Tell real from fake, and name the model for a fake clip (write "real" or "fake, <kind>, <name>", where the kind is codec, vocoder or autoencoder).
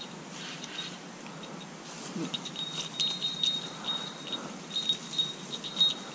real